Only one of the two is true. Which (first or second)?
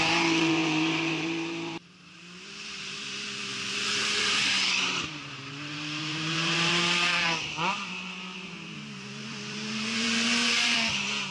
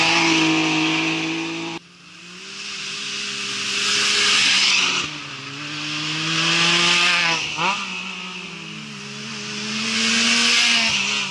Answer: second